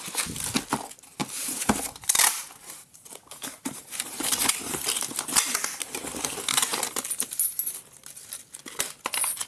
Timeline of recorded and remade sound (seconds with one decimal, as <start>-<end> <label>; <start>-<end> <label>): 0.0-1.2 recorded; 1.2-4.6 remade; 4.6-6.7 recorded; 6.7-7.5 remade; 7.5-9.5 recorded